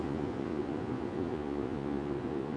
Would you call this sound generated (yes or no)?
yes